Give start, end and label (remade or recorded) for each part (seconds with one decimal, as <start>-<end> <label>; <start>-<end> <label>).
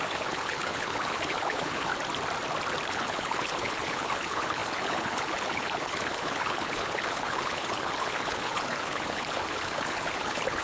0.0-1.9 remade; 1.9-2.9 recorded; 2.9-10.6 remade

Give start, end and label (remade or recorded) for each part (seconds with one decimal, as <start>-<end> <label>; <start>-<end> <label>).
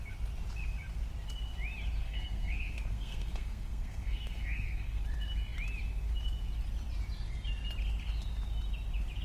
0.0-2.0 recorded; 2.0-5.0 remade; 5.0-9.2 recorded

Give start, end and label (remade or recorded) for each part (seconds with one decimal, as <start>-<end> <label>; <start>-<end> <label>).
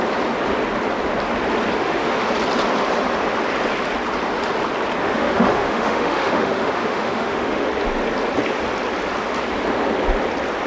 0.0-1.8 recorded; 1.8-2.3 remade; 2.3-5.0 recorded; 5.0-7.7 remade; 7.7-10.7 recorded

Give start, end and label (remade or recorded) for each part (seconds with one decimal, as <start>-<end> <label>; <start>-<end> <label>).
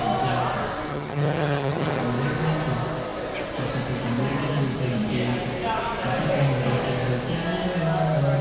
0.0-0.9 recorded; 0.9-2.0 remade; 2.0-8.4 recorded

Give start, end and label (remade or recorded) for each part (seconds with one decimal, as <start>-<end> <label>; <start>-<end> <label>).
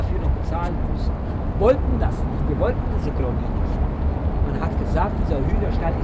0.0-6.0 recorded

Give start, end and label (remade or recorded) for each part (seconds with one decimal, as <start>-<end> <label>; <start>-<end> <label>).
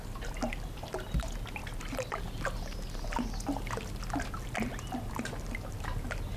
0.0-6.4 recorded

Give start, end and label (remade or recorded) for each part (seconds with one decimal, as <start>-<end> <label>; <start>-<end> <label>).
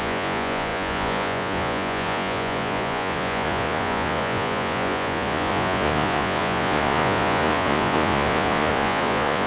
0.0-9.5 remade